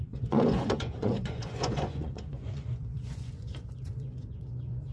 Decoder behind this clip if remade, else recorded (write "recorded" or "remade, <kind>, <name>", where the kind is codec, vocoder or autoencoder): remade, vocoder, Vocos